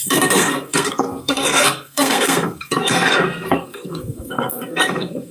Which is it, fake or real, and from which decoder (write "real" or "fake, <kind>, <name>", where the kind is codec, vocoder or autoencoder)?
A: fake, codec, SNAC